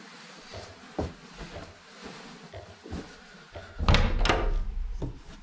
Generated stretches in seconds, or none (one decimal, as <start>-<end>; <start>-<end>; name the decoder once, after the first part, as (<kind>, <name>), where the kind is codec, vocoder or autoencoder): none